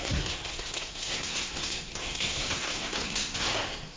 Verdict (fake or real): fake